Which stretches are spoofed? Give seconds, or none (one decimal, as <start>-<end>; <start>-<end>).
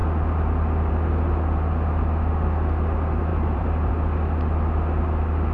3.3-3.9